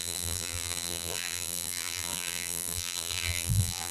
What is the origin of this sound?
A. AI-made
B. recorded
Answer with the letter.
A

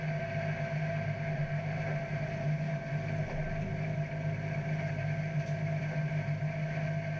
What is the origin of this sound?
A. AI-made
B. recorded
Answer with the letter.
B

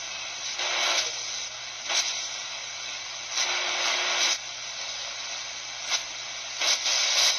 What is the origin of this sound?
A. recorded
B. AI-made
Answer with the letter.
A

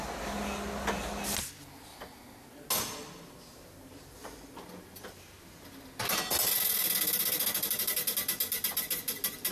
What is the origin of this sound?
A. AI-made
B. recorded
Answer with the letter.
B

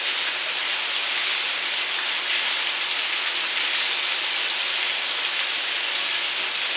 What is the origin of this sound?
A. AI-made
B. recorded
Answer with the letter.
B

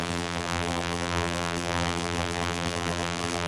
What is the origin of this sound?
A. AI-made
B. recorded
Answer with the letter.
A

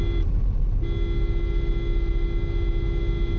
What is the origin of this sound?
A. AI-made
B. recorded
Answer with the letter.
B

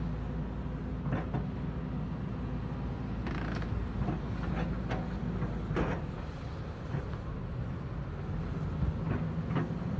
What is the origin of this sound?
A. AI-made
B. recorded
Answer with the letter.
B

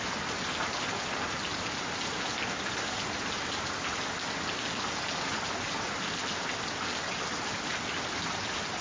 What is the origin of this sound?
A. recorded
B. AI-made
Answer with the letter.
A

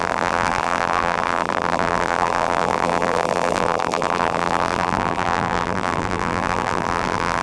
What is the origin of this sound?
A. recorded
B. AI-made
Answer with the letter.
B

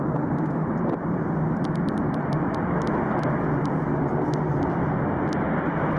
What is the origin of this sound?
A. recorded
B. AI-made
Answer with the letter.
A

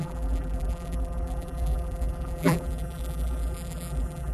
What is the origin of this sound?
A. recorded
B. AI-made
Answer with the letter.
B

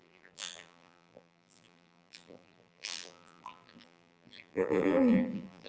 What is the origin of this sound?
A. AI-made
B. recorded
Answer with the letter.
A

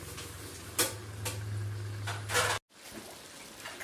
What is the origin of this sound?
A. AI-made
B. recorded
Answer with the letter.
B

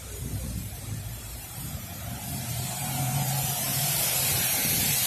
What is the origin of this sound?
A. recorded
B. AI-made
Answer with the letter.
B